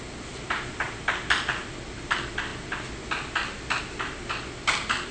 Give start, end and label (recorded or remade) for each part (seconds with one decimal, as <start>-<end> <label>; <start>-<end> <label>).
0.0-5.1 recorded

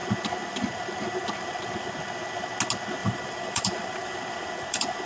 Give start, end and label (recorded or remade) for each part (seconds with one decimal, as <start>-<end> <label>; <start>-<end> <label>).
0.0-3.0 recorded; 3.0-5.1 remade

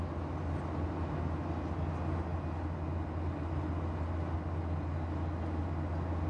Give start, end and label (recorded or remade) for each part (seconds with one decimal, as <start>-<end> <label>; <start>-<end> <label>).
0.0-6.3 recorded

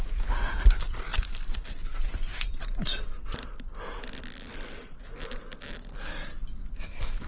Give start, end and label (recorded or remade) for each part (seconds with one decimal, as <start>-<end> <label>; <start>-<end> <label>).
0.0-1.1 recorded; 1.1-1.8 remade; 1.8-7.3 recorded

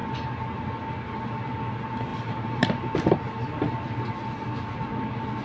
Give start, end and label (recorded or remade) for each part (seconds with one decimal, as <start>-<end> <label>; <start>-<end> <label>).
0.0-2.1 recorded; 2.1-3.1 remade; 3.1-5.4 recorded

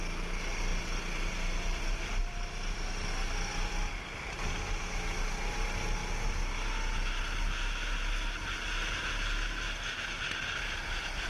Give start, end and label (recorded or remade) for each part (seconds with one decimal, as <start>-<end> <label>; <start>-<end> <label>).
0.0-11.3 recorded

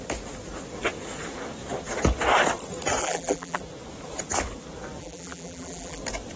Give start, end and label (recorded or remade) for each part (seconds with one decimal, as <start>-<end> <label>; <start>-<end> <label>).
0.0-3.0 recorded; 3.0-3.6 remade; 3.6-5.0 recorded; 5.0-6.0 remade; 6.0-6.4 recorded

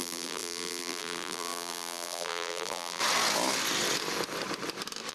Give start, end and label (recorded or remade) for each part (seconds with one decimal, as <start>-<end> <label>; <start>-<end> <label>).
0.0-3.0 remade; 3.0-5.1 recorded